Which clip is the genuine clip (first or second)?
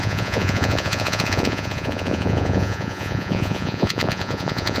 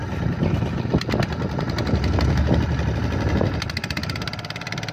second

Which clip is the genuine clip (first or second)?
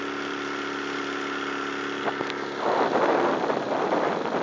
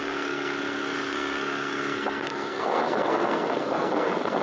first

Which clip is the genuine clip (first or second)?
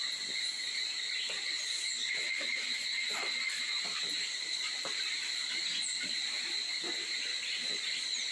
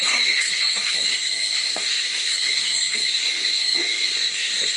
first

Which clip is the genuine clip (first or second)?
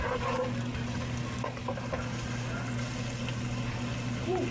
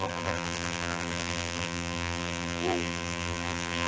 first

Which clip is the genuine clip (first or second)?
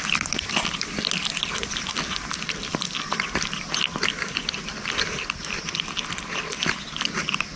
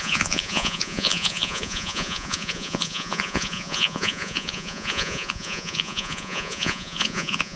first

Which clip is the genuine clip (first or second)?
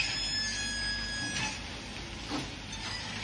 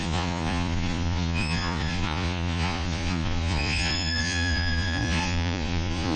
first